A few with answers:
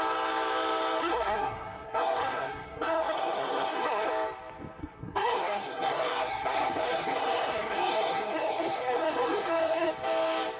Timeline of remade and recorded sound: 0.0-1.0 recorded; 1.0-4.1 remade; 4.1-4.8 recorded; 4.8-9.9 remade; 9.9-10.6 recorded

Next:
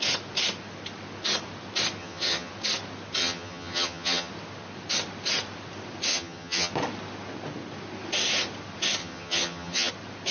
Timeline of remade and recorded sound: 0.0-2.0 recorded; 2.0-2.5 remade; 2.5-3.2 recorded; 3.2-4.3 remade; 4.3-6.1 recorded; 6.1-6.7 remade; 6.7-9.0 recorded; 9.0-9.9 remade; 9.9-10.3 recorded

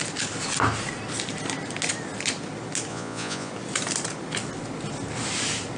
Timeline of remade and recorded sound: 0.0-2.9 recorded; 2.9-3.5 remade; 3.5-5.8 recorded

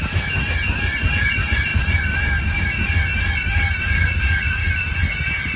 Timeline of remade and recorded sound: 0.0-5.6 recorded

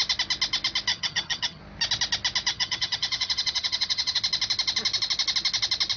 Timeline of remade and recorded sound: 0.0-0.9 recorded; 0.9-1.6 remade; 1.6-2.5 recorded; 2.5-4.2 remade; 4.2-6.0 recorded